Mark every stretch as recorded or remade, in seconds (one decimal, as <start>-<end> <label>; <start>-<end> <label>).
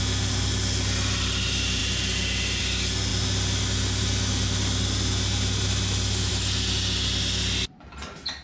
0.0-8.4 recorded